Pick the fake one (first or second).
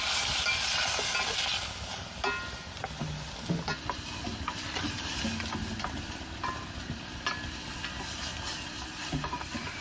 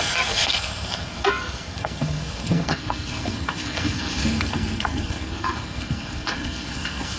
second